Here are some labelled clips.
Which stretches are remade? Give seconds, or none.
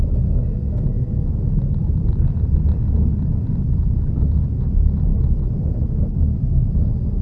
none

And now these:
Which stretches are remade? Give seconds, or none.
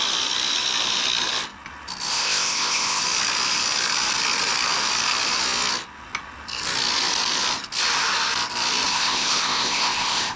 2.1-3.0 (codec, ZipCodec); 8.9-10.4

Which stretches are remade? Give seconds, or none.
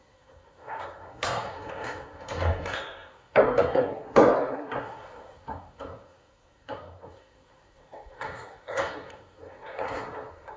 0.0-10.6 (codec, SNAC)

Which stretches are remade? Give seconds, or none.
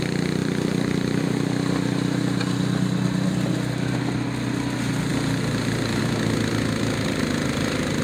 0.4-1.0 (vocoder, BigVGAN v2)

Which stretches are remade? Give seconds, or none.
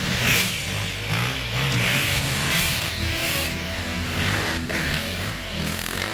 0.0-0.6 (codec, DAC); 1.8-6.1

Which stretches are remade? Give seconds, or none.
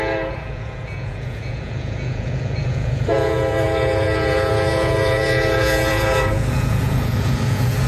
0.0-7.9 (vocoder, Vocos)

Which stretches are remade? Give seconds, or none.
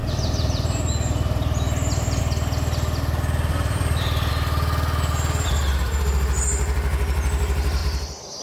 0.0-2.2 (vocoder, BigVGAN v2); 3.5-4.3; 7.8-8.4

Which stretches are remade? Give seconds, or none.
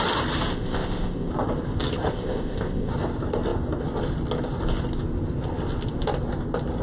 0.5-1.3 (codec, ZipCodec); 2.1-2.9